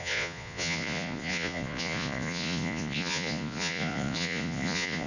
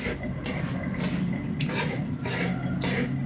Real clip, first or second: second